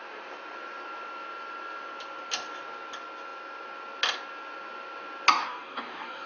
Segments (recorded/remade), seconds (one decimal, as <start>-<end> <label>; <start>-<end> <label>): 0.0-5.4 recorded; 5.4-6.3 remade